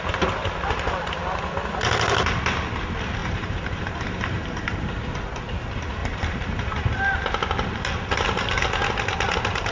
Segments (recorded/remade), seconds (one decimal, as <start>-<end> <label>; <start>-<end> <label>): 0.0-3.2 recorded; 3.2-5.0 remade; 5.0-6.0 recorded; 6.0-7.0 remade; 7.0-9.7 recorded

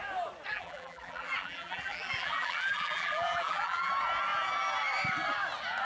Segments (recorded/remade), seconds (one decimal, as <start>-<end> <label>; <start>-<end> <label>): 0.0-0.5 recorded; 0.5-3.9 remade; 3.9-5.8 recorded

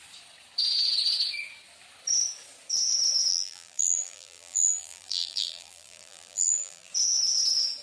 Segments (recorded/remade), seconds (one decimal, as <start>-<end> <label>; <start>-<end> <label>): 0.0-3.3 recorded; 3.3-6.9 remade; 6.9-7.8 recorded

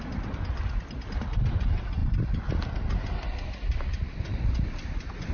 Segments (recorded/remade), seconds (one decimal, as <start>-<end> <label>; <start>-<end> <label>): 0.0-5.3 recorded

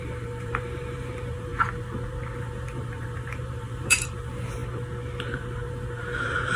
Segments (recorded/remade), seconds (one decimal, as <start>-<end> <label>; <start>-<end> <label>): 0.0-1.5 remade; 1.5-2.4 recorded; 2.4-4.6 remade; 4.6-5.2 recorded; 5.2-6.6 remade

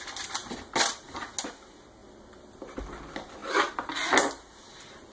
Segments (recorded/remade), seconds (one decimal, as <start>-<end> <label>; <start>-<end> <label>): 0.0-0.4 recorded; 0.4-1.3 remade; 1.3-2.0 recorded; 2.0-2.8 remade; 2.8-3.4 recorded; 3.4-4.6 remade; 4.6-5.1 recorded

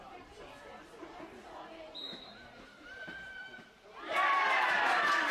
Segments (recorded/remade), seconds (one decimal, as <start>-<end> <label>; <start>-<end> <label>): 0.0-2.0 recorded; 2.0-5.3 remade